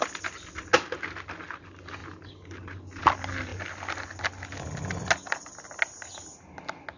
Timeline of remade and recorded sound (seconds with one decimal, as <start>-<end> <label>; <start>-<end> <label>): 0.0-2.0 recorded; 2.0-3.0 remade; 3.0-7.0 recorded